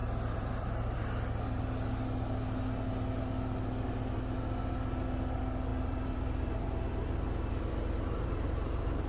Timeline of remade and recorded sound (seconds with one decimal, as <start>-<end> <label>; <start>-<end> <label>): 0.0-1.0 remade; 1.0-5.7 recorded; 5.7-9.1 remade